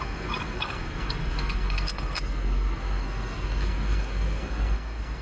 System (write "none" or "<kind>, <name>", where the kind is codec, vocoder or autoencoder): codec, SNAC